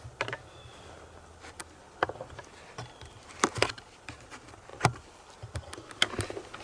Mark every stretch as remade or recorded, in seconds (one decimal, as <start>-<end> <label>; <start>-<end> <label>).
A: 0.0-4.7 recorded; 4.7-5.5 remade; 5.5-6.6 recorded